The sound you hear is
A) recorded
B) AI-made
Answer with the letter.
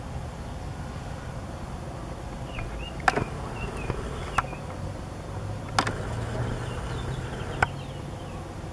A